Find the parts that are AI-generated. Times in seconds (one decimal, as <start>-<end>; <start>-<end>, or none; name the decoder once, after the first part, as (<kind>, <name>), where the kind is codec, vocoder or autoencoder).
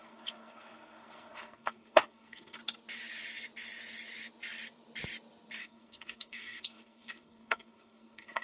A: 0.0-2.6 (codec, SNAC); 5.6-8.4